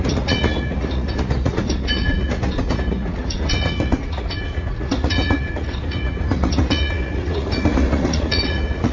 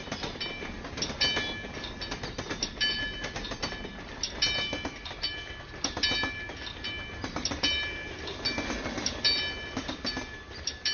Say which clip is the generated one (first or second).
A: first